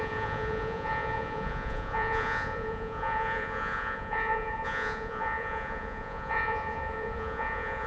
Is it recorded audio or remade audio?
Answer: remade